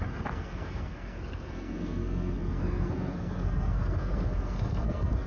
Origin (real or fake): fake